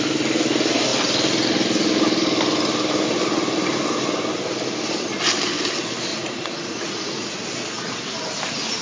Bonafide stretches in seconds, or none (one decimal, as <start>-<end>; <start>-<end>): 0.0-6.1; 7.3-8.8